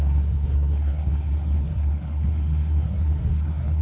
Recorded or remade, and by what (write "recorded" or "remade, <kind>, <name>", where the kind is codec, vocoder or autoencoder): remade, codec, SNAC